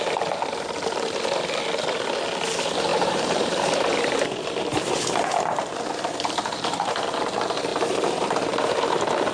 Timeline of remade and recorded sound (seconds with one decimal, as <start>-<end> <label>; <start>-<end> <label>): 0.0-2.9 recorded; 2.9-7.0 remade; 7.0-7.7 recorded; 7.7-8.5 remade; 8.5-9.3 recorded